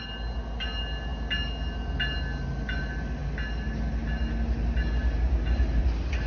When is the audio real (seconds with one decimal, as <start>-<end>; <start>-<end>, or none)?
0.0-6.3